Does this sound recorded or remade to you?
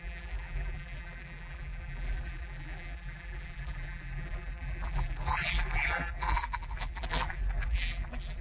remade